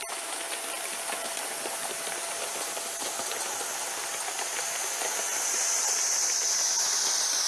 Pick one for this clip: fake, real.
real